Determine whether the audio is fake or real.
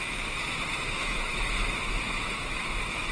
fake